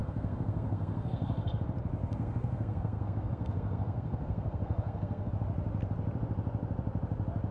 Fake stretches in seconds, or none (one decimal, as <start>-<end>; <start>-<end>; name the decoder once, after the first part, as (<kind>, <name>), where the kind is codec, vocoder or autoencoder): 0.0-1.6 (codec, SNAC); 2.0-5.3